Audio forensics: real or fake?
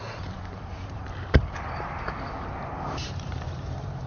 fake